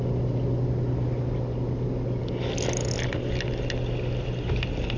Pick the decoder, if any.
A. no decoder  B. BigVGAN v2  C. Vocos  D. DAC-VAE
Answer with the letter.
A